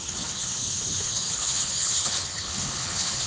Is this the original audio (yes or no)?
no